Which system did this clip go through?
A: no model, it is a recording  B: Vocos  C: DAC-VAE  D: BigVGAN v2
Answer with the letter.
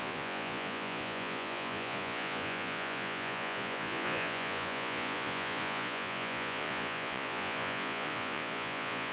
B